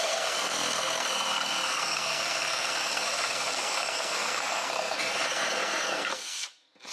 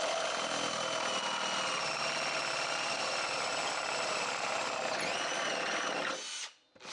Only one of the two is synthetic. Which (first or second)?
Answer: first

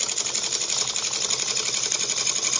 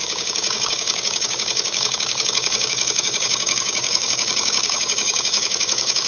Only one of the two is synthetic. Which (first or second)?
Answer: second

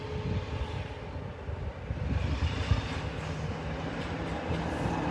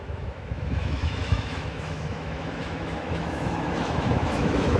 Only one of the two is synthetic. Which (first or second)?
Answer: second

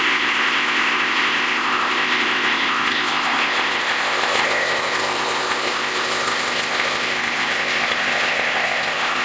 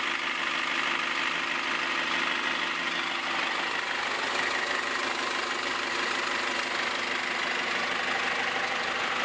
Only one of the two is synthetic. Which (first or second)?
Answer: first